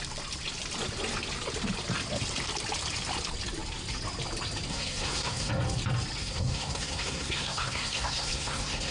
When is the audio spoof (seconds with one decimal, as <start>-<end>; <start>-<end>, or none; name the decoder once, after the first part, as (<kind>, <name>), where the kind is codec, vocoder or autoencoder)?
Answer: 4.7-5.5 (codec, SNAC); 6.2-8.9